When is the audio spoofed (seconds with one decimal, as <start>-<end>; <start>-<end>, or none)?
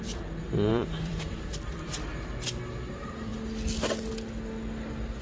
0.7-1.9